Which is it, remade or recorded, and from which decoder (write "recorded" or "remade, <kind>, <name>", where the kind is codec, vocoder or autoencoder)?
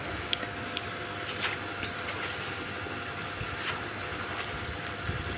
recorded